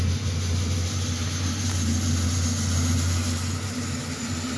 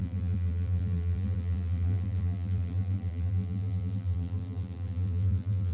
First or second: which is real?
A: first